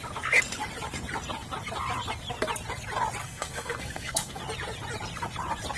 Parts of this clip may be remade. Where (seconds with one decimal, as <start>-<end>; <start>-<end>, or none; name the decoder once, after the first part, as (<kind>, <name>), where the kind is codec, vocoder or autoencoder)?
3.2-4.4 (codec, SNAC)